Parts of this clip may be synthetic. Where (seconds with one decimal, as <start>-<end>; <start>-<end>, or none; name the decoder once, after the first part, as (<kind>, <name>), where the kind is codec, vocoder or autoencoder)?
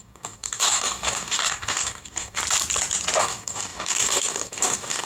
0.0-2.4 (codec, DAC); 3.2-5.1